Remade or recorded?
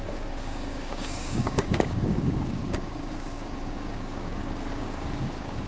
remade